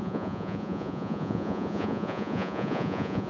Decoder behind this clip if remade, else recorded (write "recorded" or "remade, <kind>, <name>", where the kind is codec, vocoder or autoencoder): remade, vocoder, Vocos